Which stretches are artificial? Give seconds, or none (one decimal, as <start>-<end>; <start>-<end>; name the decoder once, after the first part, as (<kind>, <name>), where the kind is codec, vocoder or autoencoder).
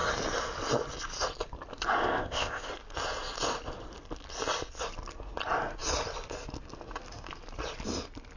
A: 2.0-2.7 (codec, ZipCodec)